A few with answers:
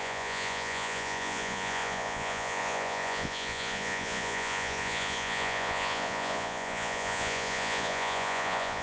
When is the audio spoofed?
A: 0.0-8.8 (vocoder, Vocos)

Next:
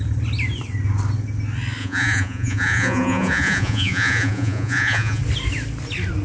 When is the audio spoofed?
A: 1.8-5.2 (vocoder, Vocos)